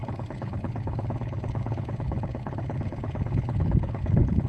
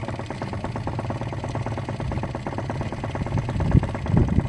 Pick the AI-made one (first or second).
first